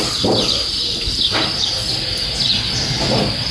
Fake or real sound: real